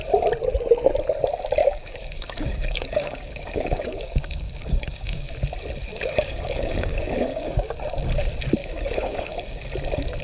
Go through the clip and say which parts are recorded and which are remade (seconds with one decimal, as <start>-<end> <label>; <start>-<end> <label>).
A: 0.0-1.6 recorded; 1.6-5.3 remade; 5.3-5.9 recorded; 5.9-7.7 remade; 7.7-8.6 recorded; 8.6-9.7 remade; 9.7-10.2 recorded